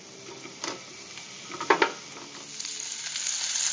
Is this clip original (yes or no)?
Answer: yes